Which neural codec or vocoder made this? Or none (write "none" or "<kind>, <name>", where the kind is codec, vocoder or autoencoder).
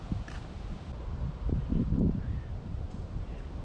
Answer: none